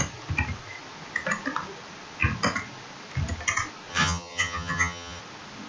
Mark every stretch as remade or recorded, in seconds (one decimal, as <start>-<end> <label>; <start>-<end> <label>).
0.0-3.9 recorded; 3.9-5.2 remade; 5.2-5.7 recorded